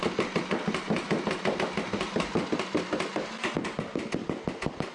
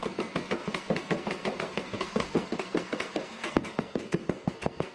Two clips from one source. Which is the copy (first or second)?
second